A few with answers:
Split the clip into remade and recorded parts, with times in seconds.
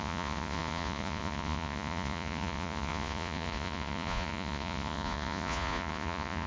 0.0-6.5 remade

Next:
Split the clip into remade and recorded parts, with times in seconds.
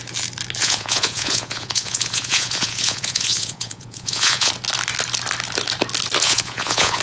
0.0-0.6 recorded; 0.6-4.5 remade; 4.5-6.2 recorded; 6.2-7.0 remade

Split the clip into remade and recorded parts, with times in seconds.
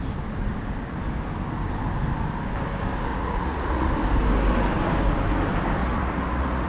0.0-3.1 recorded; 3.1-3.9 remade; 3.9-5.8 recorded; 5.8-6.7 remade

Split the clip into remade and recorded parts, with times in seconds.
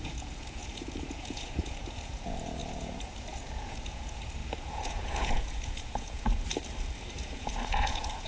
0.0-6.5 remade; 6.5-7.1 recorded; 7.1-8.3 remade